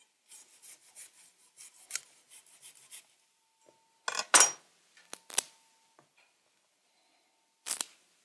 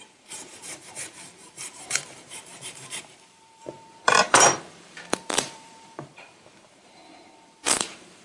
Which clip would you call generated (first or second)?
second